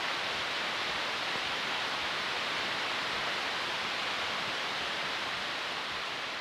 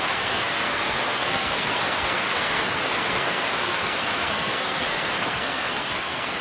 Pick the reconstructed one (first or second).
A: second